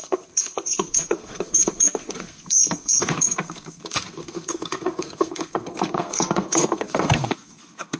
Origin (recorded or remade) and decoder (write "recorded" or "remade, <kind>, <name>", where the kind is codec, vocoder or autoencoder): remade, codec, SNAC